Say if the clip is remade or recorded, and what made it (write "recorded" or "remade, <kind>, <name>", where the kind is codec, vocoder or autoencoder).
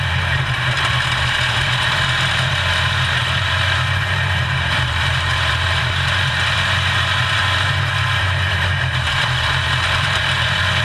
remade, vocoder, BigVGAN v2